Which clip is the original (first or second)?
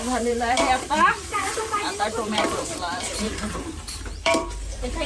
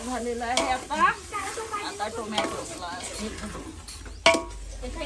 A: second